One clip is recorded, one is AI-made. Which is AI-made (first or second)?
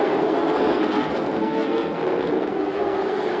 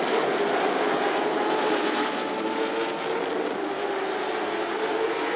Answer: first